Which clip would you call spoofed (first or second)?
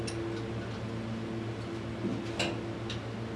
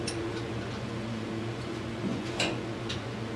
second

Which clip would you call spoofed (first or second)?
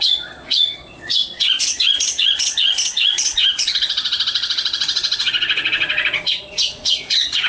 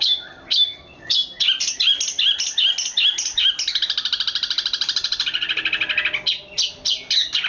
first